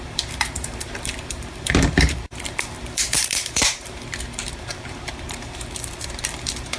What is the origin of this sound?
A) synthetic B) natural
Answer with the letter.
A